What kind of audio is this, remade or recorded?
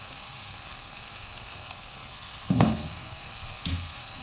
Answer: remade